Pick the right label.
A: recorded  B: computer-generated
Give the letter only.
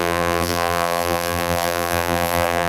B